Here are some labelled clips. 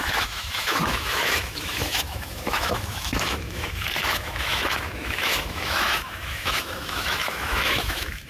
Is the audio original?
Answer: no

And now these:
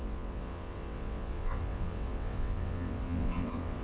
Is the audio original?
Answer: no